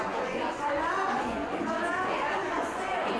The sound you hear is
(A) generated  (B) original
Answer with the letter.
A